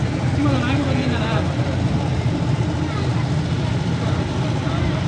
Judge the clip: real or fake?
real